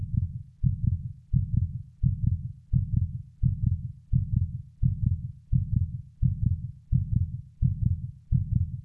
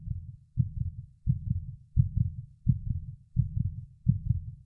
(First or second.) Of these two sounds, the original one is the first